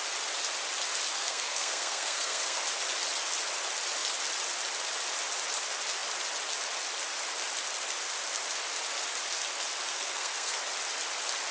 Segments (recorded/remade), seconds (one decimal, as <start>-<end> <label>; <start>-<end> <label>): 0.0-1.1 recorded; 1.1-2.6 remade; 2.6-9.9 recorded; 9.9-10.6 remade; 10.6-11.5 recorded